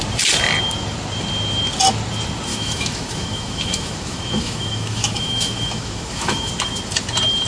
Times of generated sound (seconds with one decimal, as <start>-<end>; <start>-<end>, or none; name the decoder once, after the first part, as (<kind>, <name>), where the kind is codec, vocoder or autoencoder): 2.5-6.5 (autoencoder, DAC-VAE)